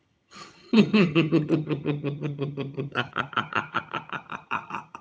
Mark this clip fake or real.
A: fake